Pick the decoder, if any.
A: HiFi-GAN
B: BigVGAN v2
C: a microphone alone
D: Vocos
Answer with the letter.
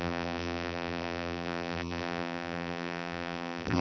B